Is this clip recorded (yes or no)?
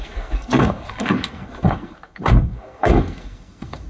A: no